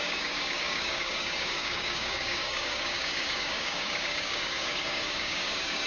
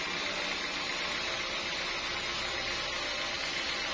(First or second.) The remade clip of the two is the first